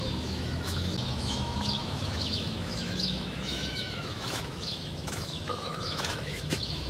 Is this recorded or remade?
remade